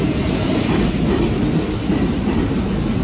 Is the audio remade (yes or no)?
yes